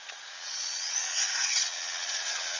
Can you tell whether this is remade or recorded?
remade